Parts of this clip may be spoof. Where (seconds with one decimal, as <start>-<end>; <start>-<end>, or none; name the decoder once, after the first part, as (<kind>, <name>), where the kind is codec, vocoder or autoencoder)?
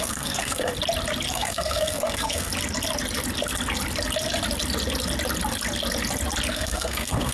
0.0-0.7 (codec, SNAC); 1.3-2.5; 6.5-7.3